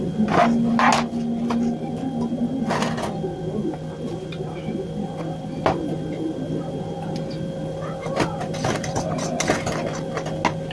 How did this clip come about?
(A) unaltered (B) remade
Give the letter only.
A